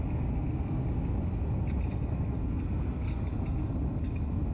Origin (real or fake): real